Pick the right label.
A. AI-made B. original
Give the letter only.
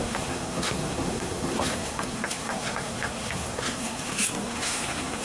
A